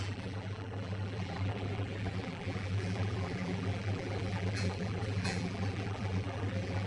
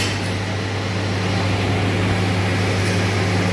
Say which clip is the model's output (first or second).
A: first